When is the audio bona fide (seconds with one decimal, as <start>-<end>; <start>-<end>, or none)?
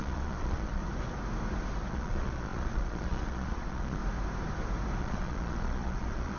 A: 0.8-1.9; 4.0-5.0